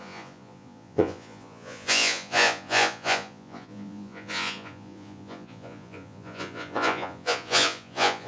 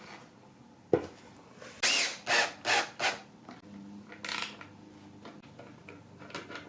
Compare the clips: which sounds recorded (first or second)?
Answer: second